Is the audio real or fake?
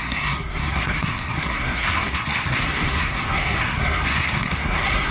fake